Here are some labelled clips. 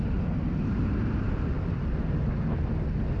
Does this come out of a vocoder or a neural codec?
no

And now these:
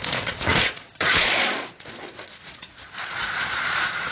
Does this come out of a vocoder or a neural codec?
yes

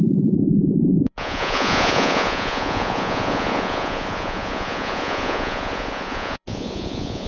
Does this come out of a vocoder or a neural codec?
yes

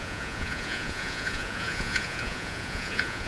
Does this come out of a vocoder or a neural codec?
yes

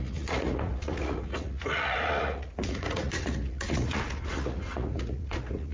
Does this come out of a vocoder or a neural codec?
yes